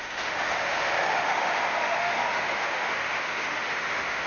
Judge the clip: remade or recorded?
remade